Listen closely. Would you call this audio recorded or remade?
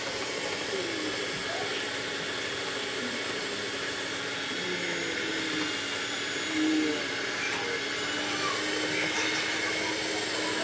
recorded